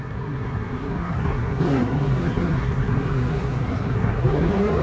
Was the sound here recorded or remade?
remade